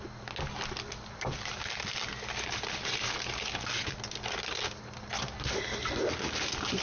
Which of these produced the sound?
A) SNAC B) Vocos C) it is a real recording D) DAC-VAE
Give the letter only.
C